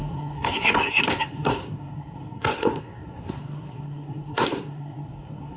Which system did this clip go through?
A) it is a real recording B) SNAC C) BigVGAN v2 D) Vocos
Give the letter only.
B